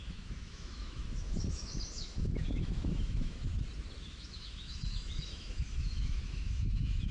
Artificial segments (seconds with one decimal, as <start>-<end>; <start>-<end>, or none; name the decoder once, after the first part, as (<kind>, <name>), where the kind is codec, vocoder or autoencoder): 0.0-3.5 (autoencoder, DAC-VAE); 4.0-7.1